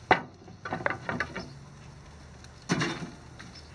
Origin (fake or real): real